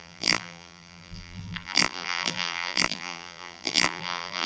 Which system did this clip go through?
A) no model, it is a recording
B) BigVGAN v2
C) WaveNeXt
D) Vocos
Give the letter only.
B